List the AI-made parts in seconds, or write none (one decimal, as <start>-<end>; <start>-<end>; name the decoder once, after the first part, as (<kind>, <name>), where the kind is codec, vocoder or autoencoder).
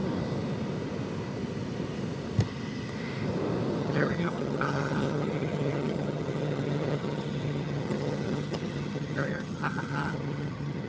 3.8-10.9 (vocoder, HiFi-GAN)